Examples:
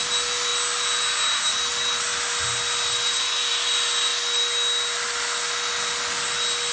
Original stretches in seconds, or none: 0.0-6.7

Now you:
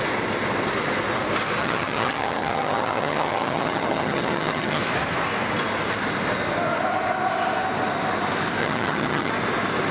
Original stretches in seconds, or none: 0.0-1.6; 4.8-8.6; 9.3-9.9

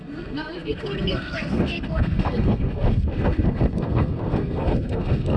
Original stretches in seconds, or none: none

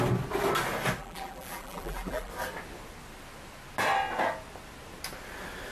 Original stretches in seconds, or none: 0.0-1.0; 2.3-5.7

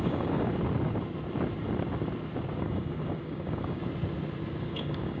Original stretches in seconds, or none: 0.5-2.6; 3.8-4.6